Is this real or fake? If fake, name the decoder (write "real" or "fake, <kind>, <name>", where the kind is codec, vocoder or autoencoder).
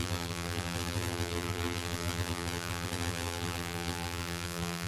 fake, vocoder, BigVGAN v2